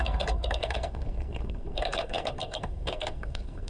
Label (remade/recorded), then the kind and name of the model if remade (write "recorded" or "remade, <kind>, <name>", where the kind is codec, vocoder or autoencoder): remade, codec, SNAC